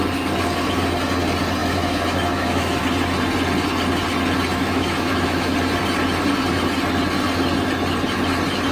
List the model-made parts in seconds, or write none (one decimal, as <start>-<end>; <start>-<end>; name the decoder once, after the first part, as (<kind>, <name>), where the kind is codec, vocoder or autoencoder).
1.6-2.8 (autoencoder, DAC-VAE); 4.5-5.5

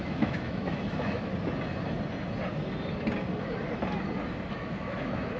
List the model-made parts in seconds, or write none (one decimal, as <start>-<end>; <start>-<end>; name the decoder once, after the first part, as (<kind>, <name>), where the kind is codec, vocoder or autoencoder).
0.0-1.3 (autoencoder, DAC-VAE); 4.5-5.4

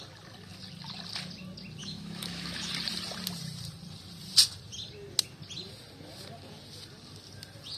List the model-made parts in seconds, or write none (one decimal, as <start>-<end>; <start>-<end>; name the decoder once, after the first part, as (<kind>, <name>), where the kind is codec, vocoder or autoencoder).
1.8-2.7 (autoencoder, DAC-VAE)

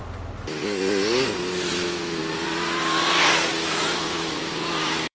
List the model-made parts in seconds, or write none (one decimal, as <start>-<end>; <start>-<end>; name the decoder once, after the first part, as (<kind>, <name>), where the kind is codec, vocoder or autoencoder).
1.7-2.2 (autoencoder, DAC-VAE); 3.8-5.1